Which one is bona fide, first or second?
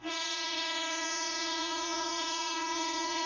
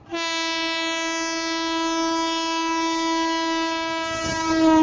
second